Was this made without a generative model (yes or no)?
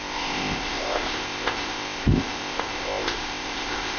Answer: no